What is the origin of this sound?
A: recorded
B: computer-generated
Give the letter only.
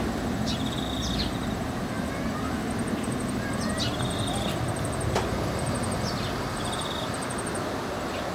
A